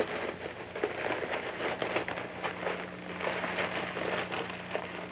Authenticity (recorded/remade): recorded